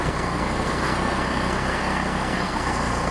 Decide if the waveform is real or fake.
fake